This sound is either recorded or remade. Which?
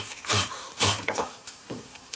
remade